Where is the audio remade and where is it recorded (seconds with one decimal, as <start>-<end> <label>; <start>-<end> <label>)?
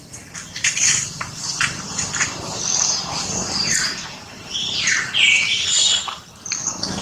0.0-3.8 recorded; 3.8-4.4 remade; 4.4-7.0 recorded